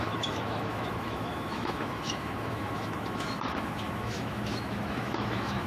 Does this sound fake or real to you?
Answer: fake